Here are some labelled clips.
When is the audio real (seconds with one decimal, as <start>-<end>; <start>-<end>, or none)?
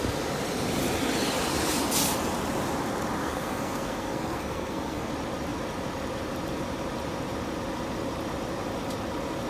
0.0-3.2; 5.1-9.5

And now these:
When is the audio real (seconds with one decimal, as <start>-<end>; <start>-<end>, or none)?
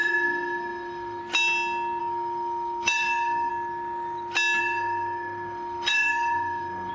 1.2-2.0; 3.5-4.6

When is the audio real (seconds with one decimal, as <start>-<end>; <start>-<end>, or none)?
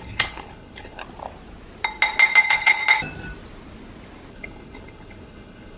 1.0-2.4; 2.8-4.3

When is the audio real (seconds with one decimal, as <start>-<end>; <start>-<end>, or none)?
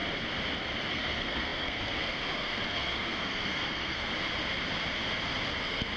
0.0-0.9; 4.1-5.6